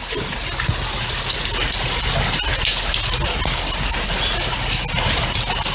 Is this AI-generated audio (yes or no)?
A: no